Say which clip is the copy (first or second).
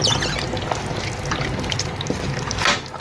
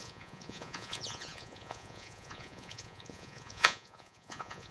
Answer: second